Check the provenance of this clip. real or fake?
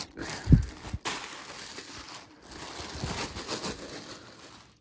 real